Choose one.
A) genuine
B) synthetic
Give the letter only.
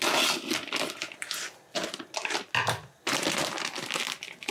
A